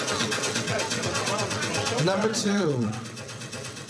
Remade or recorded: remade